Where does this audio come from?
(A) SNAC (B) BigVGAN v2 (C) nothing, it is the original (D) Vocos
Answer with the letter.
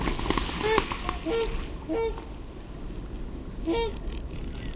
C